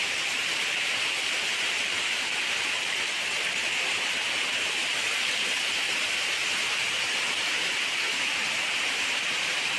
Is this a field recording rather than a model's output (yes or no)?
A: no